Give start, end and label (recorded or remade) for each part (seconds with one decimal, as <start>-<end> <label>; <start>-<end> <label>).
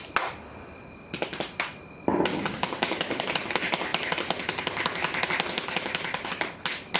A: 0.0-2.3 recorded; 2.3-3.2 remade; 3.2-7.0 recorded